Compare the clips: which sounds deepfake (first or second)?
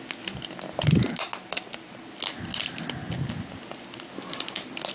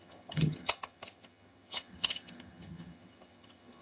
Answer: second